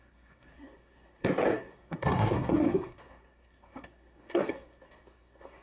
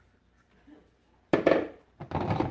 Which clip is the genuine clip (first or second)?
second